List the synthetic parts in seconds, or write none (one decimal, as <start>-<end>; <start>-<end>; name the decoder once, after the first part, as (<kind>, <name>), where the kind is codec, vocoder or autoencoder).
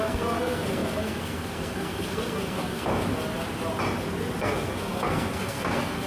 0.0-2.9 (codec, SNAC); 4.4-6.1